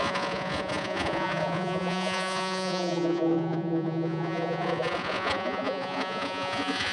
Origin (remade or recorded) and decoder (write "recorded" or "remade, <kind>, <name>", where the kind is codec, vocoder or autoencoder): remade, vocoder, Vocos